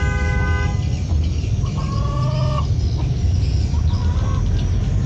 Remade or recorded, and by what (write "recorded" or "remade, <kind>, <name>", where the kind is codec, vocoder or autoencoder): recorded